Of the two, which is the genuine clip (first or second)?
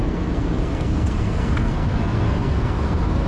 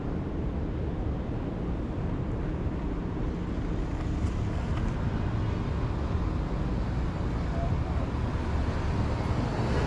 second